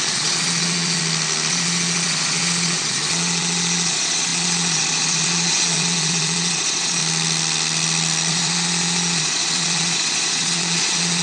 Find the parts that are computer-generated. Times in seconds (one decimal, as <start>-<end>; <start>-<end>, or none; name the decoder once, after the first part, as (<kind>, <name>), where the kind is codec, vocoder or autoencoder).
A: 0.0-1.0 (vocoder, Vocos); 1.5-7.0; 8.3-11.2